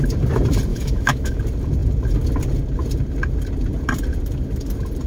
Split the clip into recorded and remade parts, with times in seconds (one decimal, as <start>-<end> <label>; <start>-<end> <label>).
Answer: 0.0-0.7 recorded; 0.7-1.4 remade; 1.4-5.1 recorded